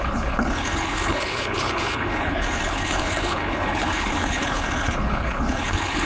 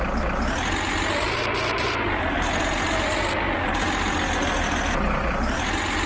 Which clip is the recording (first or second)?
second